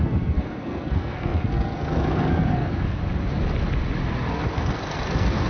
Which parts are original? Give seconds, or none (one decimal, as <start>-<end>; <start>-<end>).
3.0-4.3